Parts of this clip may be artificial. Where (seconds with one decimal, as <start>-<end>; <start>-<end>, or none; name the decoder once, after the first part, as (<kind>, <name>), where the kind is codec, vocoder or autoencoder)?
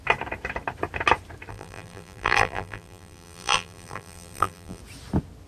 1.5-4.8 (vocoder, BigVGAN v2)